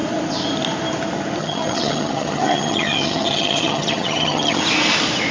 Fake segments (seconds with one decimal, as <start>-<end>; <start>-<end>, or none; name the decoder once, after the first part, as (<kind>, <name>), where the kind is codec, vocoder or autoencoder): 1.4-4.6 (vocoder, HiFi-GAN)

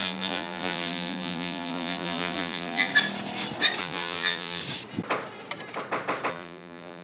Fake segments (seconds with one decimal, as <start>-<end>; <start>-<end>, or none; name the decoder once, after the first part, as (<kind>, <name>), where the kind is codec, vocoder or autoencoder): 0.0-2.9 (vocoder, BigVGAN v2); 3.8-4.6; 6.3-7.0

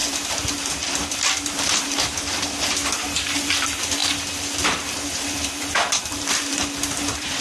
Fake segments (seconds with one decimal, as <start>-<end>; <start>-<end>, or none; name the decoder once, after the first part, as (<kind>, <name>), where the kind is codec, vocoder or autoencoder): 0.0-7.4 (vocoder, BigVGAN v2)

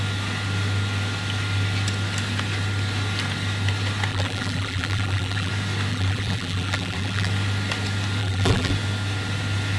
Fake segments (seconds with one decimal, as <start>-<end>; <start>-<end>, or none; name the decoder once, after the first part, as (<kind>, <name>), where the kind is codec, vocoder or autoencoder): 4.1-5.5 (vocoder, BigVGAN v2); 5.9-7.3; 8.2-8.7